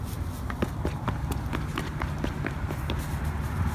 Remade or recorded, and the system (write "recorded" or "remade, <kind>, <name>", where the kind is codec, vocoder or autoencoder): recorded